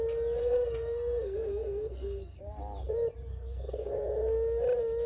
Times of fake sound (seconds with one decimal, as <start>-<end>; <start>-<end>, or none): 0.4-2.4; 3.3-3.9